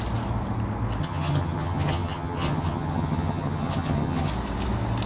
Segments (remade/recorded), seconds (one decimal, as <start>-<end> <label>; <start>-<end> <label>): 0.0-1.0 recorded; 1.0-4.3 remade; 4.3-5.1 recorded